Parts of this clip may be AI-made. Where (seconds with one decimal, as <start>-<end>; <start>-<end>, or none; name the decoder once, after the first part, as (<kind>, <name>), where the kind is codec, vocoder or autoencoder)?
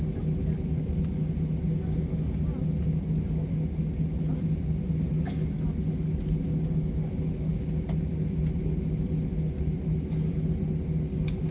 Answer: 1.7-2.5 (codec, DAC); 6.5-7.0